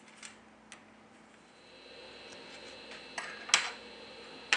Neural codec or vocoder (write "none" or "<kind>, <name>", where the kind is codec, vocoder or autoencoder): none